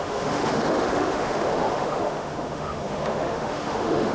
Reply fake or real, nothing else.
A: fake